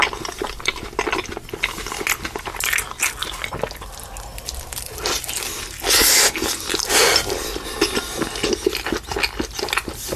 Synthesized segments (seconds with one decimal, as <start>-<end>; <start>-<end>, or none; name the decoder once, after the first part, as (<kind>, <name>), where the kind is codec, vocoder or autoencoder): none